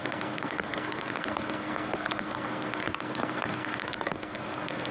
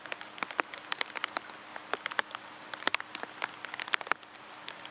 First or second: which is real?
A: second